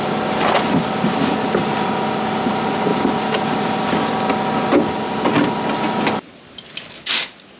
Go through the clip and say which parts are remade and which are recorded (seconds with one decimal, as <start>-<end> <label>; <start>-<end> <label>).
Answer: 0.0-2.9 recorded; 2.9-4.1 remade; 4.1-7.6 recorded